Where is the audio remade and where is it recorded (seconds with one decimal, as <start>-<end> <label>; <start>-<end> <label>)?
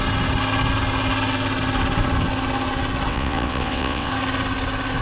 0.0-3.1 recorded; 3.1-4.1 remade; 4.1-5.0 recorded